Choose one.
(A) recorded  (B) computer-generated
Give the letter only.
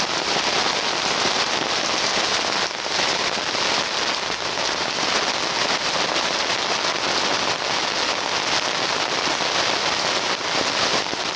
A